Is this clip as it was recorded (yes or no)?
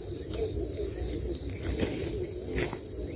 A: yes